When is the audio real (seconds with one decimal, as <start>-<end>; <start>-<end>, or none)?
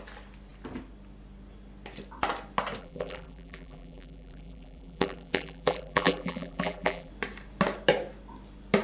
0.0-2.8; 7.1-8.8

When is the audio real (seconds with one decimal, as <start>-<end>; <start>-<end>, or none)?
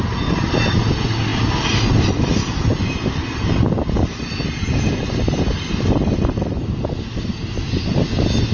0.0-8.5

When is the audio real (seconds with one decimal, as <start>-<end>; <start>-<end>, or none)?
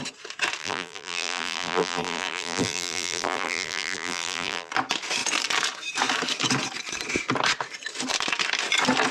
0.0-0.6; 4.7-9.1